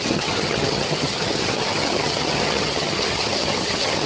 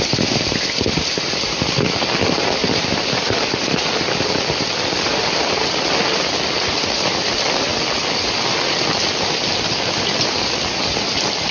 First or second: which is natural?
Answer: second